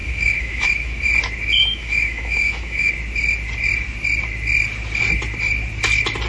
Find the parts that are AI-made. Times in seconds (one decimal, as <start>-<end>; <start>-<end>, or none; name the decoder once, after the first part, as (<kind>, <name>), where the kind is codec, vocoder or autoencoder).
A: 0.0-1.1 (autoencoder, DAC-VAE); 1.6-2.9